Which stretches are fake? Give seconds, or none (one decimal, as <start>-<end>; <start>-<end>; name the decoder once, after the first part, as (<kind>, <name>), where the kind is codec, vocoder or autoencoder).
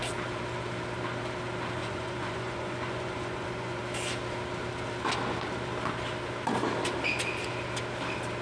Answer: 1.8-3.8 (vocoder, Vocos)